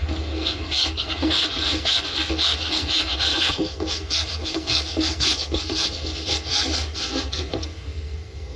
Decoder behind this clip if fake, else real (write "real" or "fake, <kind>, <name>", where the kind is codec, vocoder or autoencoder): fake, codec, SNAC